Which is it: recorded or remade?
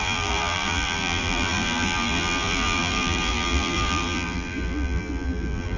remade